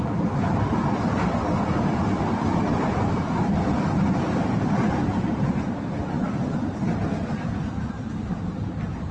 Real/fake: real